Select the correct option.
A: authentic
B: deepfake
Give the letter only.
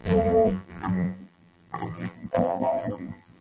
B